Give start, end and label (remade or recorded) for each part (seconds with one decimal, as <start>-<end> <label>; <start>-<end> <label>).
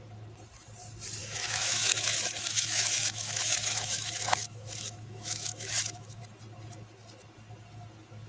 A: 0.0-1.2 recorded; 1.2-6.2 remade; 6.2-8.3 recorded